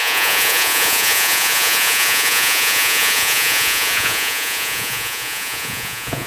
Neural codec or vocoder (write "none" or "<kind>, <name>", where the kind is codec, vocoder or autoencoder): vocoder, Vocos